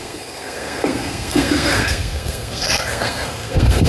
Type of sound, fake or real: fake